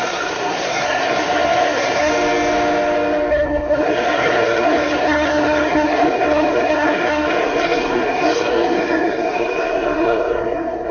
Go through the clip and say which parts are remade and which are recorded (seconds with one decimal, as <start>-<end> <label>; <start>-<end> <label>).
0.0-2.1 remade; 2.1-3.3 recorded; 3.3-10.9 remade